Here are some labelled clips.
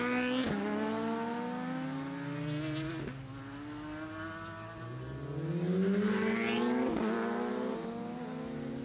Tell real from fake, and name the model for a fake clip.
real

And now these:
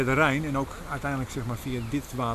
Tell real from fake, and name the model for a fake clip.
real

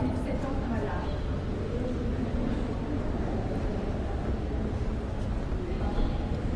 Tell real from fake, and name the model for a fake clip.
real